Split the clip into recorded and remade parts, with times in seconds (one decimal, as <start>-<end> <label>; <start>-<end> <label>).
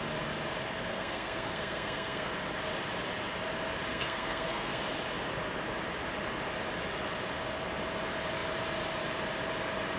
0.0-0.9 recorded; 0.9-2.3 remade; 2.3-3.9 recorded; 3.9-4.8 remade; 4.8-10.0 recorded